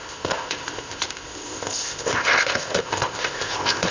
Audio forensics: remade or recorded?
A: remade